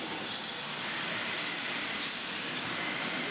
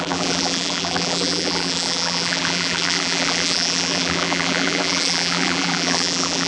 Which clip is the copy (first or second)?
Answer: second